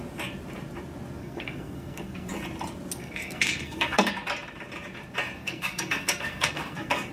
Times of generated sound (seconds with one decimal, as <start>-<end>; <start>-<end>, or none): 1.2-2.3; 3.0-4.1; 5.4-7.1